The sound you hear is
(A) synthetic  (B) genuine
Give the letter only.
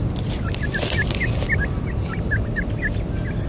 B